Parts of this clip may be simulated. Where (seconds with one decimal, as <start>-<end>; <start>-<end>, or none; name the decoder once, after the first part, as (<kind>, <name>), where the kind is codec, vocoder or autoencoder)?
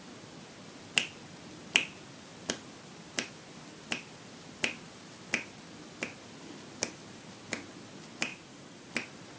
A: 8.3-8.9 (vocoder, Vocos)